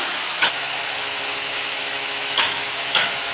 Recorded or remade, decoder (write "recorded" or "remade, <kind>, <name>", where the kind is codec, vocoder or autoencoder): remade, autoencoder, DAC-VAE